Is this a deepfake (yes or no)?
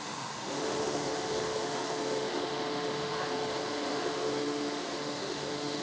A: yes